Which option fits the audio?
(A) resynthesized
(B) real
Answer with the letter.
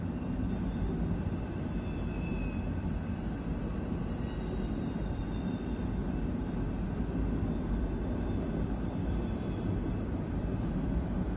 B